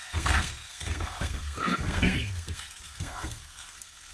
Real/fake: fake